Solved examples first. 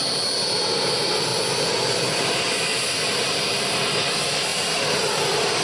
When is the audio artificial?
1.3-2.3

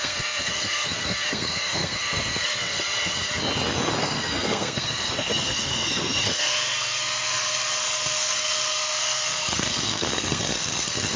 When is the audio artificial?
0.0-3.3; 4.0-11.2